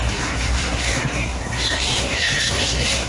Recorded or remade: remade